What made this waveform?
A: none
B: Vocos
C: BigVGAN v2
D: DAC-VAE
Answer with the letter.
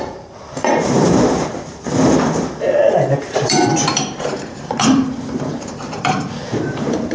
C